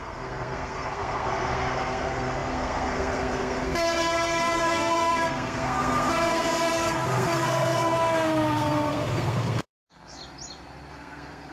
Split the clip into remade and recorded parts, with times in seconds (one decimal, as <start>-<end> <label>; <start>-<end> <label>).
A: 0.0-10.2 remade; 10.2-10.9 recorded; 10.9-11.5 remade